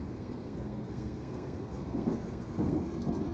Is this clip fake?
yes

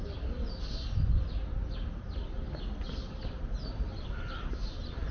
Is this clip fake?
no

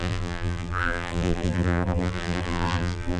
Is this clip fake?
yes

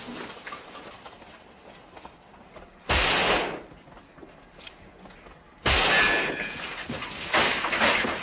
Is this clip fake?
no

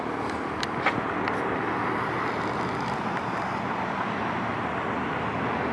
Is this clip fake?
no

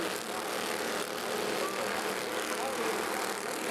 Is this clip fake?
no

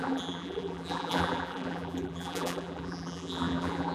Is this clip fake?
yes